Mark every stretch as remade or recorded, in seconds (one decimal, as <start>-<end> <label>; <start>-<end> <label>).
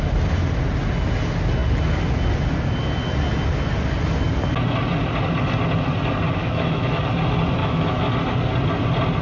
0.0-6.4 recorded; 6.4-7.0 remade; 7.0-7.6 recorded; 7.6-8.1 remade; 8.1-9.2 recorded